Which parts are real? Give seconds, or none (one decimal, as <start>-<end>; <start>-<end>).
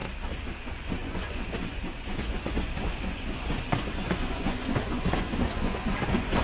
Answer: 0.0-0.6